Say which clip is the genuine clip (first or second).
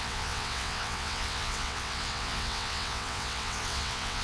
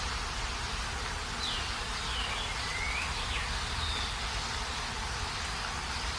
second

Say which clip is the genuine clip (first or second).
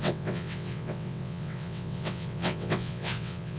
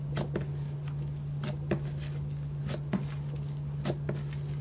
second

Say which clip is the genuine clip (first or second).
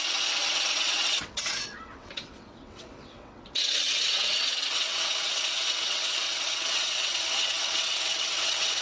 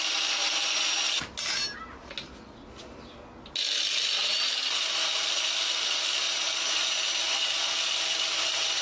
second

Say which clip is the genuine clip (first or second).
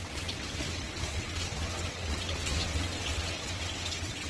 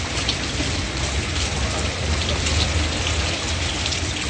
second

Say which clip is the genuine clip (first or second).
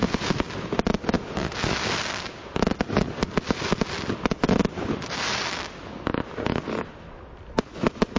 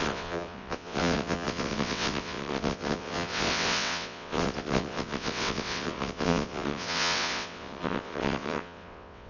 first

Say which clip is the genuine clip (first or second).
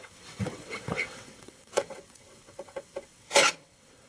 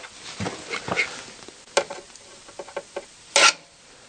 second